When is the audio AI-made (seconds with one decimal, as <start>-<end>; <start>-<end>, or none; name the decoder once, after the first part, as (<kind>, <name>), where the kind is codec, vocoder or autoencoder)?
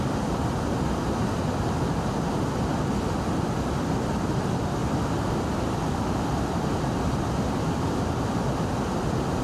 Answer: 4.8-6.8 (vocoder, BigVGAN v2)